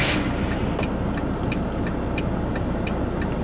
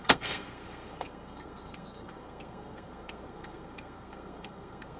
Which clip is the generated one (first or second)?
second